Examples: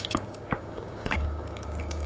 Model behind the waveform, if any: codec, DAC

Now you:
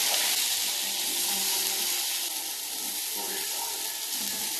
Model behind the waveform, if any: vocoder, BigVGAN v2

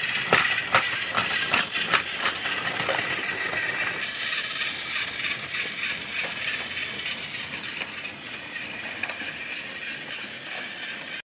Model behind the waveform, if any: none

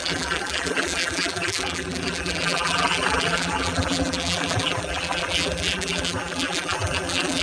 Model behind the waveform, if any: vocoder, BigVGAN v2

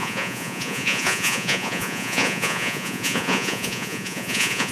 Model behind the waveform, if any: vocoder, Vocos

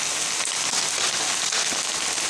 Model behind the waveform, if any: none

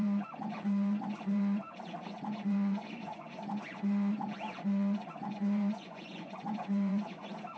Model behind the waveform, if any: vocoder, Vocos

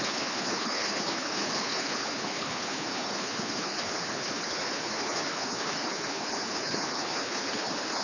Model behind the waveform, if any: codec, HILCodec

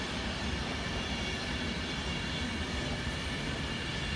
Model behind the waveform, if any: none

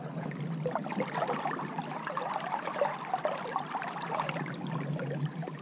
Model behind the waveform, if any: none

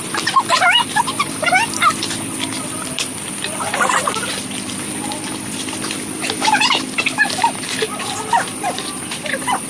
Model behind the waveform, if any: vocoder, BigVGAN v2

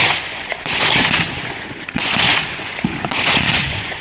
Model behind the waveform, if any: vocoder, Vocos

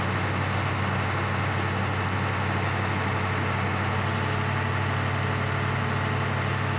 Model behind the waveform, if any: none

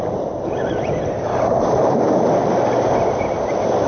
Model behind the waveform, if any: none